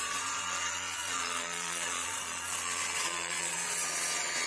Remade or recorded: remade